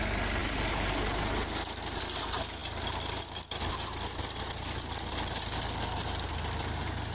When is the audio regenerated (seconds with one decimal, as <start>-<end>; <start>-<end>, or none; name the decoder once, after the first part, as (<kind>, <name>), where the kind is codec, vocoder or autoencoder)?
none